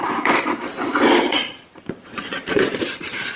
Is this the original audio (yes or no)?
no